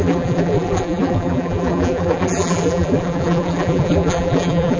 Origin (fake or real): fake